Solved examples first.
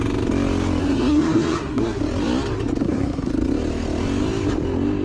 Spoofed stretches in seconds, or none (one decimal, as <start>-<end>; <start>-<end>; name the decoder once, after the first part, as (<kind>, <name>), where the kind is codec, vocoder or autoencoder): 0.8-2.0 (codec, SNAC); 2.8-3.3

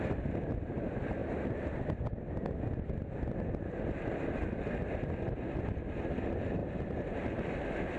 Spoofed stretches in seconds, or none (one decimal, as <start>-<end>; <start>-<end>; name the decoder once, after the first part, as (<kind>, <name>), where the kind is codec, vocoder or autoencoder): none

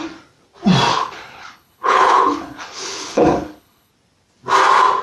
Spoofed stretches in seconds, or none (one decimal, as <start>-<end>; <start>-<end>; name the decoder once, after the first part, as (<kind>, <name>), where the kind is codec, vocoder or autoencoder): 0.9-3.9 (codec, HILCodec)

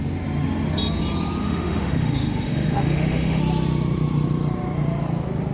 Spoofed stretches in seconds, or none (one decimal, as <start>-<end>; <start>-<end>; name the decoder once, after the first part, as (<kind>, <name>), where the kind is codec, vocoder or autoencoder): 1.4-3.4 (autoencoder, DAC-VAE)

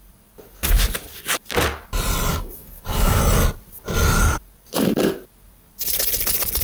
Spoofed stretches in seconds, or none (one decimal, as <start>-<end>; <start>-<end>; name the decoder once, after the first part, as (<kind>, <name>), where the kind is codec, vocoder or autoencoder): 2.3-3.2 (codec, DAC)

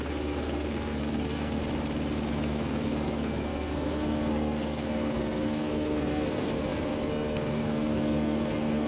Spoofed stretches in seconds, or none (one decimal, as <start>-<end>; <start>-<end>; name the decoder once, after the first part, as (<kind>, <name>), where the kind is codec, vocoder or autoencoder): 0.0-1.6 (codec, SNAC); 2.3-8.9